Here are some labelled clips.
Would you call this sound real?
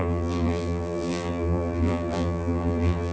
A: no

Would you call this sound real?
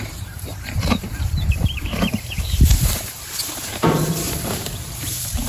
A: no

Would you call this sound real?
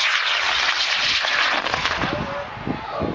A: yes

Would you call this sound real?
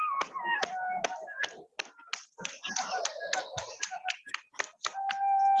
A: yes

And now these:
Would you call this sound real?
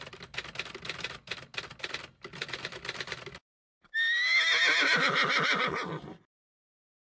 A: yes